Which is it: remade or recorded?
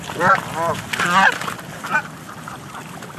recorded